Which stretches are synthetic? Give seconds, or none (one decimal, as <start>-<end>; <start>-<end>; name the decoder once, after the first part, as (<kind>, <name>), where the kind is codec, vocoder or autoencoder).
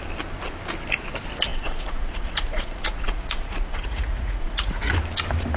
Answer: 1.5-4.9 (vocoder, Vocos)